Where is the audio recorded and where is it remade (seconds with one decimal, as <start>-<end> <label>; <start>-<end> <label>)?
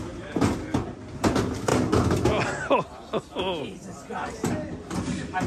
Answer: 0.0-5.5 recorded